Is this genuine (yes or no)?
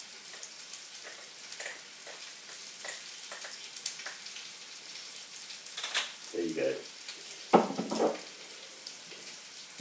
yes